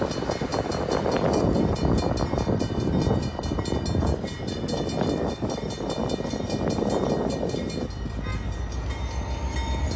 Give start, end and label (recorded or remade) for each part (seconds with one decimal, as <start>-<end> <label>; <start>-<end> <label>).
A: 0.0-10.0 recorded